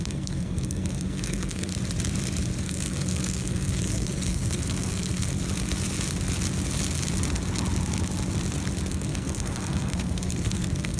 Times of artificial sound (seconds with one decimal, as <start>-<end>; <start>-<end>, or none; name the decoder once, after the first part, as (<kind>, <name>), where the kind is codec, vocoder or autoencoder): 0.0-1.7 (codec, SNAC); 2.6-5.3; 8.9-11.0